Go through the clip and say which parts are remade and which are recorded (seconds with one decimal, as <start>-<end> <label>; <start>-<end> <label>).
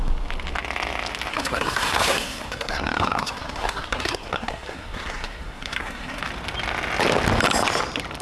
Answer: 0.0-1.3 recorded; 1.3-6.2 remade; 6.2-8.2 recorded